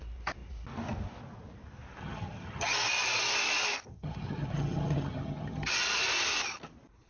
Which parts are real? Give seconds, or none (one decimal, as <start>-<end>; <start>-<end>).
0.0-2.0; 2.7-3.9; 5.7-7.1